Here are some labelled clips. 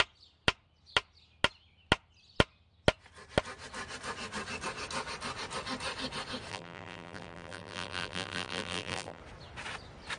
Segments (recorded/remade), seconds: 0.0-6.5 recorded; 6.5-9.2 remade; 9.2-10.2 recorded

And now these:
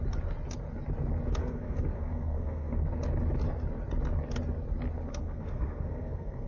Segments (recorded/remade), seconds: 0.0-1.4 recorded; 1.4-2.8 remade; 2.8-5.1 recorded; 5.1-6.5 remade